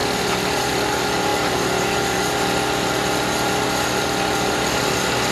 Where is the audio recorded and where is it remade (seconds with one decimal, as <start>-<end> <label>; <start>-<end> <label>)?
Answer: 0.0-5.3 recorded